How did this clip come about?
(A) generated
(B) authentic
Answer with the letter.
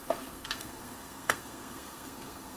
A